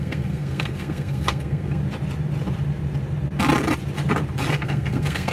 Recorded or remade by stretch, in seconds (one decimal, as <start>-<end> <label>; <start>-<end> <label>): 0.0-1.8 remade; 1.8-4.5 recorded; 4.5-5.3 remade